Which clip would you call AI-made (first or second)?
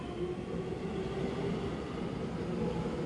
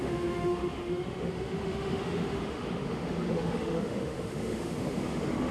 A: second